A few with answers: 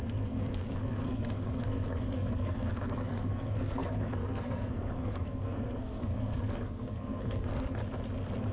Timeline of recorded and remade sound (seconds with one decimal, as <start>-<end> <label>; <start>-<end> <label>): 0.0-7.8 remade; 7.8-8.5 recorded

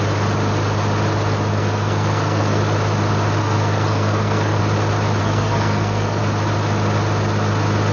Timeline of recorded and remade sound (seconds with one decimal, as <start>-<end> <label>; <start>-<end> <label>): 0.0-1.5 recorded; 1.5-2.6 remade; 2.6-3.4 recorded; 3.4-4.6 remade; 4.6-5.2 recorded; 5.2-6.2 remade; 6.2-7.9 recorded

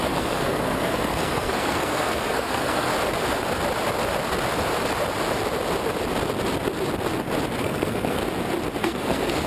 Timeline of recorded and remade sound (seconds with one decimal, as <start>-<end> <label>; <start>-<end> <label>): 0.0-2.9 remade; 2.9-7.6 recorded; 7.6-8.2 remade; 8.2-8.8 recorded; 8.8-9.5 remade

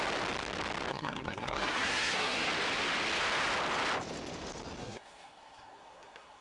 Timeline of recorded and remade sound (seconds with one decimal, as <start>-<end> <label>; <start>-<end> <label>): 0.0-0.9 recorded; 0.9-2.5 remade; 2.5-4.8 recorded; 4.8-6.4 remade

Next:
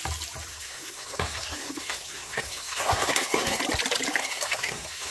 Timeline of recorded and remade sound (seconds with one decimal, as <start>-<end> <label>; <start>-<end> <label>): 0.0-0.5 recorded; 0.5-3.6 remade; 3.6-4.2 recorded; 4.2-5.1 remade

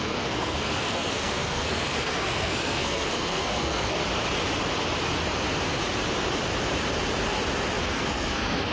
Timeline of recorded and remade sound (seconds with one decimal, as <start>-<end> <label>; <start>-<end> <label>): 0.0-4.0 remade; 4.0-7.8 recorded; 7.8-8.7 remade

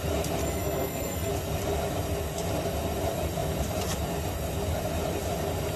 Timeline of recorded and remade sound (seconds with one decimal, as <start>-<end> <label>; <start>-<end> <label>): 0.0-0.4 recorded; 0.4-1.3 remade; 1.3-5.8 recorded

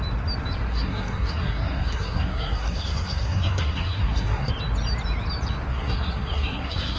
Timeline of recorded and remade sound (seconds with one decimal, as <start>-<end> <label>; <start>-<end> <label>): 0.0-0.7 recorded; 0.7-4.5 remade; 4.5-5.7 recorded; 5.7-7.0 remade